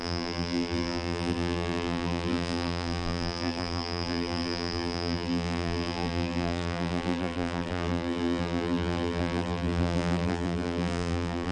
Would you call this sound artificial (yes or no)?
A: yes